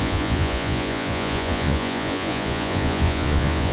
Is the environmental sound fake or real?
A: fake